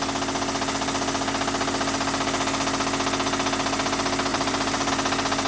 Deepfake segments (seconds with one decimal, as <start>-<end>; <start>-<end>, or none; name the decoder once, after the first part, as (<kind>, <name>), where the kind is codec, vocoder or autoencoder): 4.3-4.9 (vocoder, BigVGAN v2)